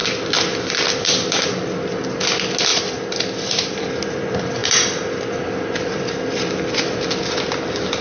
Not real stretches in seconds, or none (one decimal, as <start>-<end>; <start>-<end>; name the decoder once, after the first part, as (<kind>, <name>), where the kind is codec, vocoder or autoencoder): 2.7-3.8 (vocoder, BigVGAN v2); 4.6-6.6